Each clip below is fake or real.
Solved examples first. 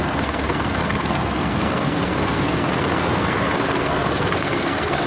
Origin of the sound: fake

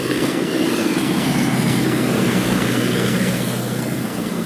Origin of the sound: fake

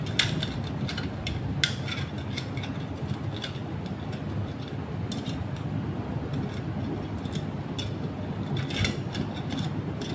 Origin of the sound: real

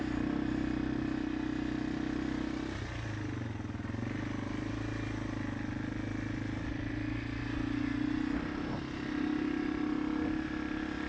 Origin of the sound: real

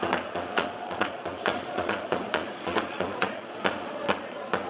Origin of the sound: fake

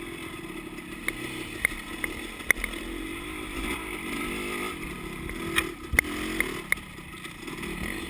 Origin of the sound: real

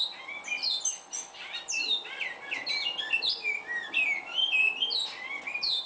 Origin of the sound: fake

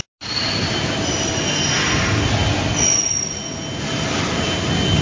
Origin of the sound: real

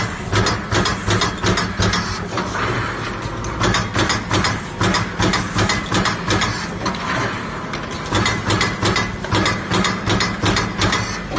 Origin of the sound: real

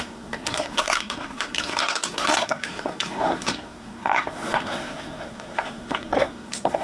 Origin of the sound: fake